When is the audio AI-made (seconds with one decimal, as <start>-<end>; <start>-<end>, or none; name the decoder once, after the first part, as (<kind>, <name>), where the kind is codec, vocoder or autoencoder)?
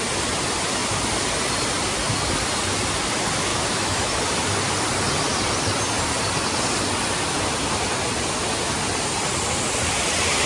3.5-4.1 (autoencoder, DAC-VAE)